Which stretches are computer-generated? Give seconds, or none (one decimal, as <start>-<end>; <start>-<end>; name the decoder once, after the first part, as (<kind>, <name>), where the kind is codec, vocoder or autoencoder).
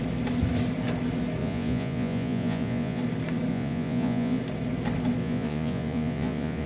1.4-3.0 (vocoder, Vocos); 3.5-4.4; 5.2-6.7